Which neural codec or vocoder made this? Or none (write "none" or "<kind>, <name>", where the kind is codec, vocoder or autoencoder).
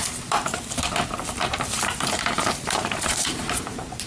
vocoder, BigVGAN v2